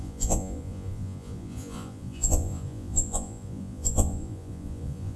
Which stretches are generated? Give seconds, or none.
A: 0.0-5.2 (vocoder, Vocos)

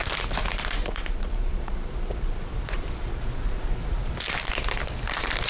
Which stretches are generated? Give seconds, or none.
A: 0.8-4.1 (vocoder, Vocos)

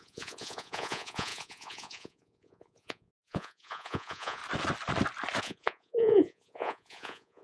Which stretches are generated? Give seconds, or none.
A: 0.0-4.4 (vocoder, Vocos); 5.4-7.4

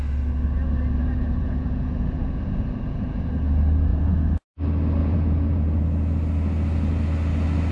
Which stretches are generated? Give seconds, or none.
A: 1.0-3.3 (vocoder, Vocos); 3.9-4.4; 5.0-5.8

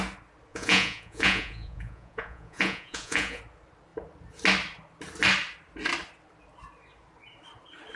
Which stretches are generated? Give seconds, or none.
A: 0.5-3.4 (vocoder, Vocos)

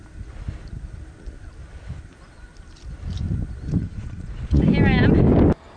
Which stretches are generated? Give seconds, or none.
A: 3.8-4.6 (vocoder, Vocos)